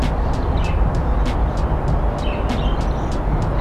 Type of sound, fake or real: real